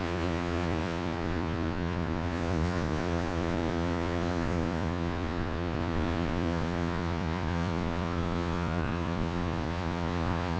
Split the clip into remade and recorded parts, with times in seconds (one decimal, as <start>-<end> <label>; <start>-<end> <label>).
0.0-10.6 remade